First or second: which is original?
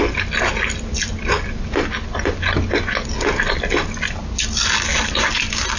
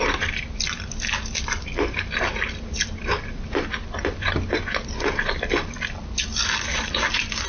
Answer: first